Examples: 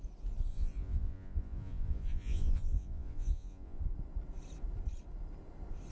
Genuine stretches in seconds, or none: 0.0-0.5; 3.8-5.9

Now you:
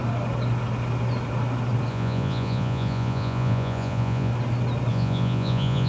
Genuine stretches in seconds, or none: 0.0-1.9; 4.3-4.9